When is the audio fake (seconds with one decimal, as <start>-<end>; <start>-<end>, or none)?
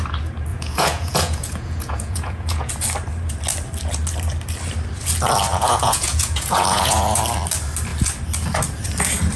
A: 0.5-2.7; 5.5-7.2